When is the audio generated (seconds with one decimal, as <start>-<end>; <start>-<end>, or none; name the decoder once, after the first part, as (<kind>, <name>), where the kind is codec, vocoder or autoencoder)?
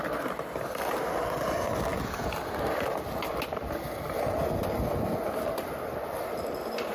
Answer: none